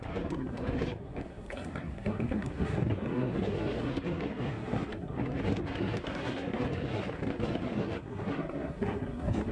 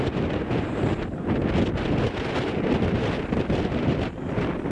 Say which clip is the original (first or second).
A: second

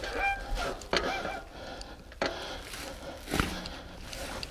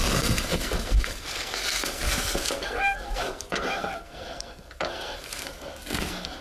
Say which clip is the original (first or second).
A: first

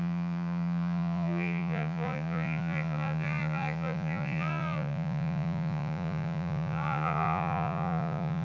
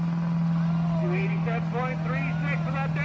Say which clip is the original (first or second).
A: second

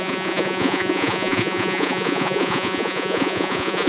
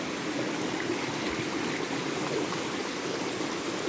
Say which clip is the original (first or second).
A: second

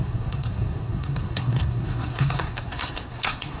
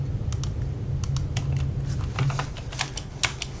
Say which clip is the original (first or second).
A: second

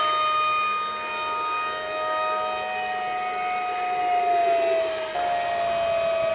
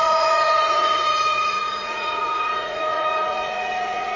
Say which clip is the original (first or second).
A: first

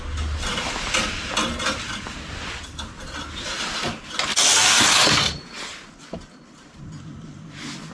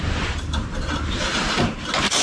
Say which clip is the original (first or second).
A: first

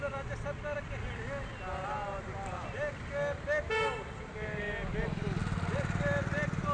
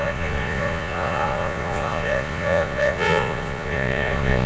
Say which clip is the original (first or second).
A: first